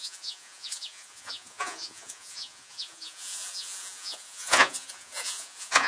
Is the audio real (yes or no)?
no